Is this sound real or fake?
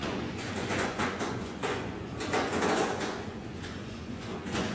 fake